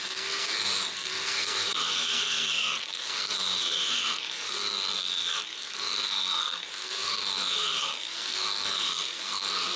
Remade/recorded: remade